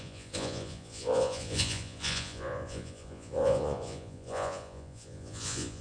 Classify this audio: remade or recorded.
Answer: remade